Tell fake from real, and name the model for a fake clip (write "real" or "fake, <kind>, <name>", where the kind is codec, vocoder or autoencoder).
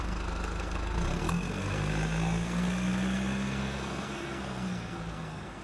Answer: fake, codec, SNAC